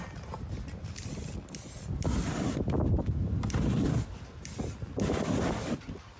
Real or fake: real